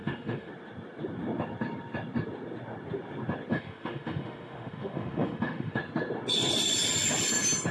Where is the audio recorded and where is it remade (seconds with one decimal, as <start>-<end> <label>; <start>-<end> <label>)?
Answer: 0.0-0.5 remade; 0.5-3.5 recorded; 3.5-5.8 remade; 5.8-7.7 recorded